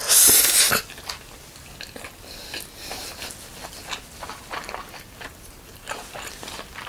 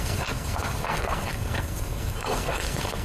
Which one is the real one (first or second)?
first